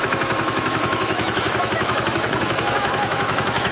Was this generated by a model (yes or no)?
yes